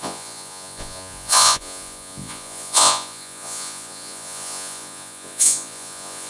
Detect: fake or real fake